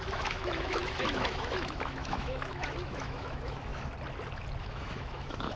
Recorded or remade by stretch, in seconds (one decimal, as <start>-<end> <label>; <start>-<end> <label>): 0.0-3.7 remade; 3.7-4.6 recorded; 4.6-5.6 remade